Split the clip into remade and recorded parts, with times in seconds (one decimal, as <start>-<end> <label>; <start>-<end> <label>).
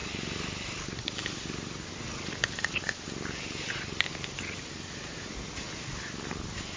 0.0-6.8 recorded